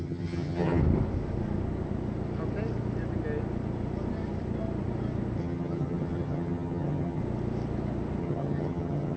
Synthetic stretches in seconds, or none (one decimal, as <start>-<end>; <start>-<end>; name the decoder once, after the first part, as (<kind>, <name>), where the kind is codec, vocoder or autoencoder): 0.0-0.8 (vocoder, HiFi-GAN); 5.4-7.2; 8.2-9.2